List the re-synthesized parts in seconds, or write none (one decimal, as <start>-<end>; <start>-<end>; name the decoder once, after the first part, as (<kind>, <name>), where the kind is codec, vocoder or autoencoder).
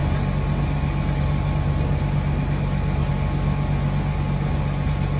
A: none